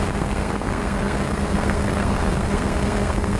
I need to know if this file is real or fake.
fake